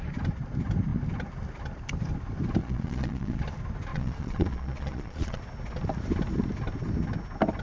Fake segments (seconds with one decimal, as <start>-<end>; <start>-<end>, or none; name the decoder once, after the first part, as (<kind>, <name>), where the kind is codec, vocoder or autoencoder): 2.6-3.4 (vocoder, Vocos); 3.9-5.4